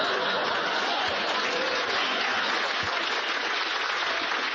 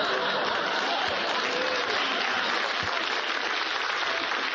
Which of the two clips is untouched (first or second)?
second